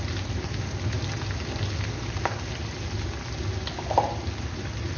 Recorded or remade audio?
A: recorded